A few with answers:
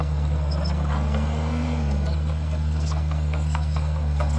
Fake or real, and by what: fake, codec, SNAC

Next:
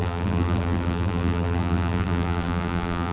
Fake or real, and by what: fake, vocoder, BigVGAN v2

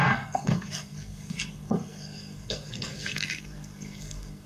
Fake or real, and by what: fake, codec, SNAC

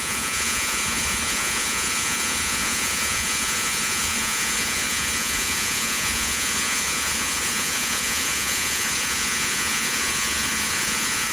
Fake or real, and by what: fake, vocoder, Vocos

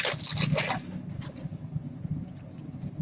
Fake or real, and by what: real